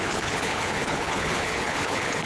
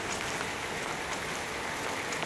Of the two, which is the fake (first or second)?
first